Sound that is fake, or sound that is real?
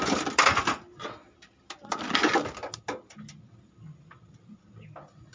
real